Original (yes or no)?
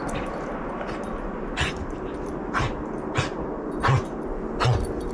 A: yes